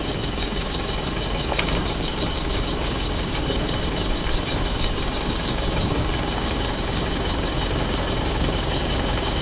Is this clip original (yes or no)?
no